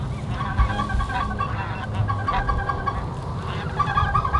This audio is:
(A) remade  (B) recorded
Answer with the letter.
B